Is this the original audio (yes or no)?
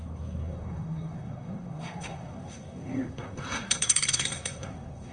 no